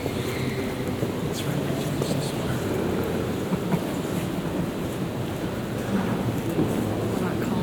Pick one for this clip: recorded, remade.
recorded